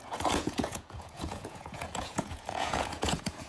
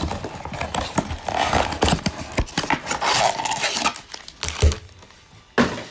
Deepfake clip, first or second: first